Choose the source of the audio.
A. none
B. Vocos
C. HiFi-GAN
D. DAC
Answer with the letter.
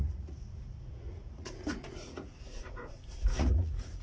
B